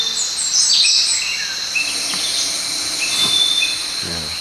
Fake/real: real